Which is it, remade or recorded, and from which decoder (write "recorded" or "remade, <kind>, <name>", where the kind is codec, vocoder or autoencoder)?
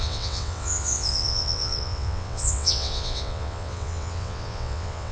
remade, vocoder, WaveNeXt